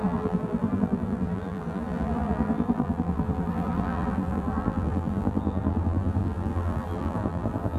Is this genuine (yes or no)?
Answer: no